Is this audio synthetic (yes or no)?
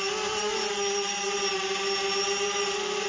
yes